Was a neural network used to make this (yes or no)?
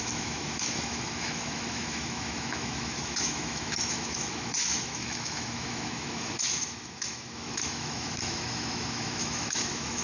yes